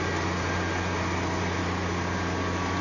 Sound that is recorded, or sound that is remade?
recorded